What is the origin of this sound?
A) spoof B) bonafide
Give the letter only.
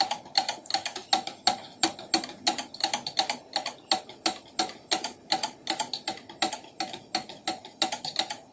B